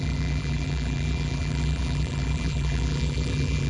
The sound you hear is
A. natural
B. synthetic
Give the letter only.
B